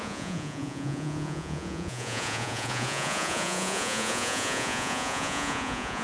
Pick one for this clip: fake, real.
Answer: fake